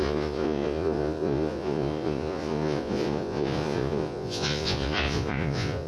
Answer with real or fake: fake